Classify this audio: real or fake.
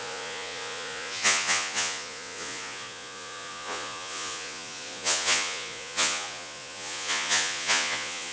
fake